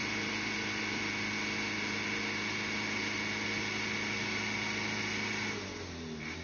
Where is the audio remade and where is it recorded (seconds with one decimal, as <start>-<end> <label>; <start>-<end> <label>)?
0.0-1.0 remade; 1.0-6.4 recorded